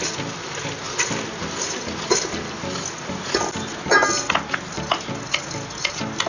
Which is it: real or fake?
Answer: real